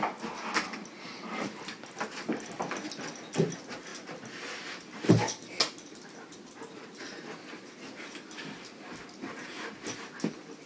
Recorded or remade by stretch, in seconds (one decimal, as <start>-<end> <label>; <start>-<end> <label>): 0.0-10.7 recorded